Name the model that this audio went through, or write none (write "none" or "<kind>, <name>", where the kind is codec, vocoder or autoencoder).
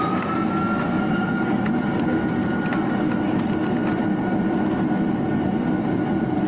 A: none